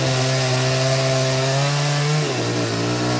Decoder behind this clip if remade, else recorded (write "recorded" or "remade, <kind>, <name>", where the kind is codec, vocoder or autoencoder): recorded